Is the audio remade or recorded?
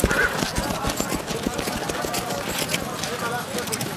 recorded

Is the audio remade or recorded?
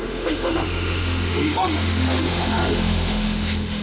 remade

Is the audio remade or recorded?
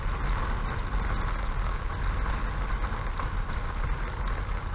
recorded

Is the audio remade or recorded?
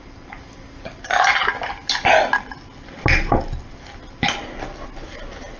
recorded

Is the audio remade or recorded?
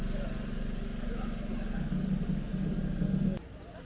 recorded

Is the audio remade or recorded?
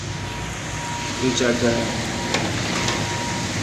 recorded